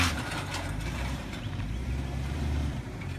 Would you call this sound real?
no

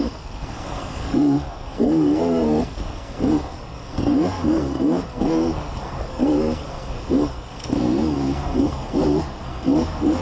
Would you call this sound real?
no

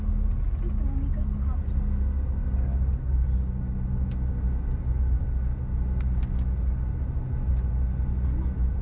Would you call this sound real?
yes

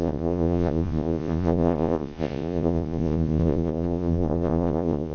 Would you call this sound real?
no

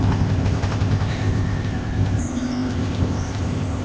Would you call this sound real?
no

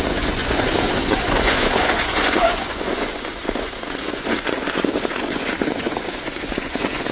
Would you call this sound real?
no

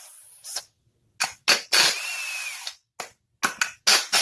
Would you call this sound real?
yes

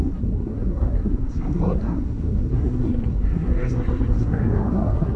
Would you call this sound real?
no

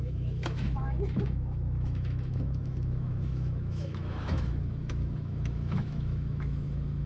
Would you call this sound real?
no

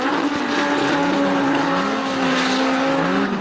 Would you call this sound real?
yes